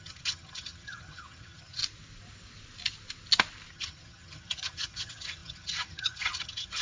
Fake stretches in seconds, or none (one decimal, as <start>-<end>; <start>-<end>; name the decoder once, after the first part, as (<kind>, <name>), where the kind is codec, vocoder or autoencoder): 0.0-1.8 (vocoder, HiFi-GAN); 3.7-6.8